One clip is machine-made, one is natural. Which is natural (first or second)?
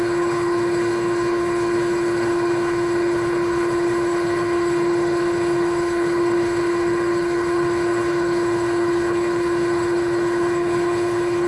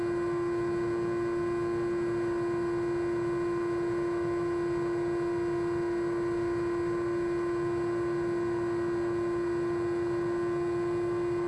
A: second